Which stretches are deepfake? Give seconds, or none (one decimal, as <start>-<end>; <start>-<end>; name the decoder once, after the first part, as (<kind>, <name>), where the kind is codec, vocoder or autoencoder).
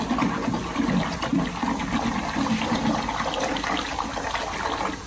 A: none